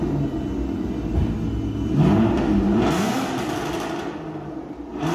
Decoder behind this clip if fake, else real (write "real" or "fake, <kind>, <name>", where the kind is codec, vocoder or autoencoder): real